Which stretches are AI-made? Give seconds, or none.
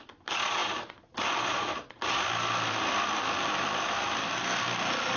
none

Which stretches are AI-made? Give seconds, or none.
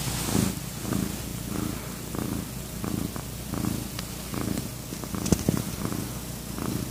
none